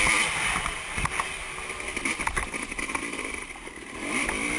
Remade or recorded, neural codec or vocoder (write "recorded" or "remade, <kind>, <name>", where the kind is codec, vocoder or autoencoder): recorded